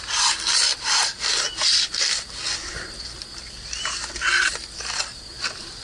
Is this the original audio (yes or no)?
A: yes